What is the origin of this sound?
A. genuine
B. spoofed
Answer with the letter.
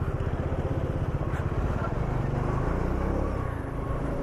A